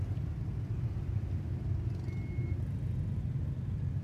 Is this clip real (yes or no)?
yes